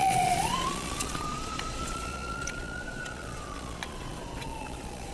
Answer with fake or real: fake